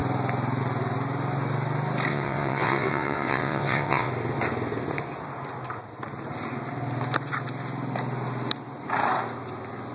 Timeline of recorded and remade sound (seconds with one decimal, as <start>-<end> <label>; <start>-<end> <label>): 0.0-2.1 recorded; 2.1-4.1 remade; 4.1-9.9 recorded